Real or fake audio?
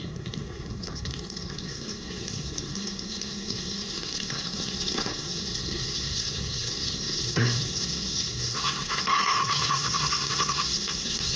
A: fake